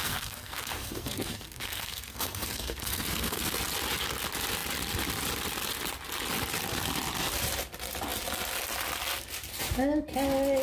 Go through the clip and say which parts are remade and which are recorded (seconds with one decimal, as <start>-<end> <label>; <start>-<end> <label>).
0.0-3.6 remade; 3.6-10.6 recorded